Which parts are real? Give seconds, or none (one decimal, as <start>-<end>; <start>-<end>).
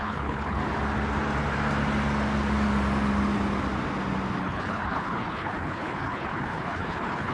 0.6-4.4